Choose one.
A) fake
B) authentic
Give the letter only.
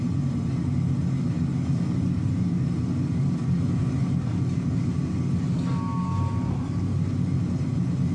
B